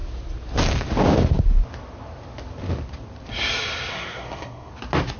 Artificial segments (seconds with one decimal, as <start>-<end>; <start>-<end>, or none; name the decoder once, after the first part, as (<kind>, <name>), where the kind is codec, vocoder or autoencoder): 3.9-4.7 (codec, SNAC)